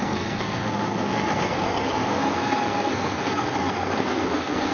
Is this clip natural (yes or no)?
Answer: no